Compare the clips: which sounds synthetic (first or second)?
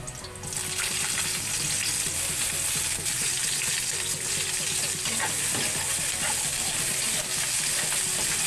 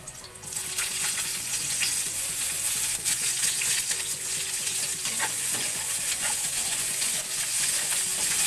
second